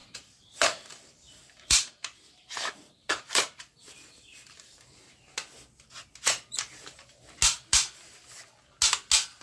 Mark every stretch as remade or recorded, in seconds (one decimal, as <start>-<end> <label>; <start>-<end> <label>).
0.0-5.1 remade; 5.1-9.4 recorded